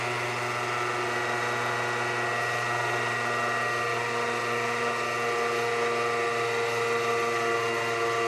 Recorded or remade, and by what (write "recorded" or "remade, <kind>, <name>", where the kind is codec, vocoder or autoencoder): recorded